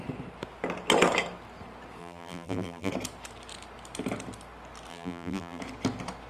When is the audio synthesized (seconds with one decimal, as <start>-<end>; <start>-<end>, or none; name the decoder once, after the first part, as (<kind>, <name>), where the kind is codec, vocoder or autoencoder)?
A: 2.0-2.9 (vocoder, BigVGAN v2); 4.9-5.6